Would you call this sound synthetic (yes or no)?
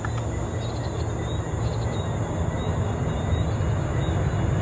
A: no